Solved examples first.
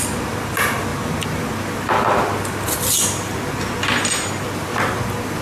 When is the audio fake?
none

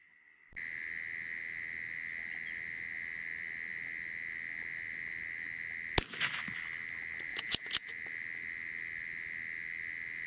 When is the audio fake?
7.3-7.9 (vocoder, Vocos)

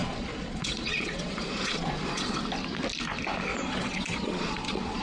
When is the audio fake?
0.0-2.4 (vocoder, Vocos); 3.5-5.0

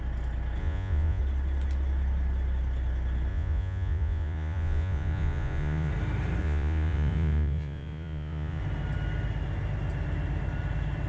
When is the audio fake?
0.6-1.2 (vocoder, Vocos); 3.3-5.9; 6.4-8.6

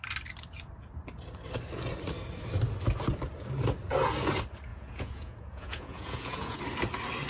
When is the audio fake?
4.7-6.6 (vocoder, Vocos)

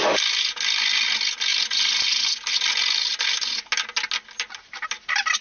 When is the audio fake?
none